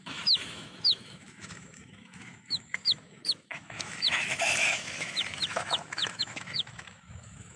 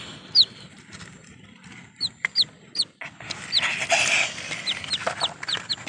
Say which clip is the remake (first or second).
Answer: first